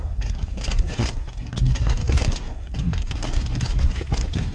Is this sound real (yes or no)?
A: no